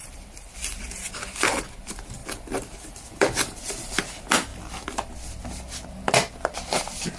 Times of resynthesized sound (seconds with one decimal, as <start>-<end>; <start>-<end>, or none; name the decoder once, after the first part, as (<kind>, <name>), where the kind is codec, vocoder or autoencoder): 0.0-1.1 (vocoder, BigVGAN v2); 2.2-3.6; 4.5-5.1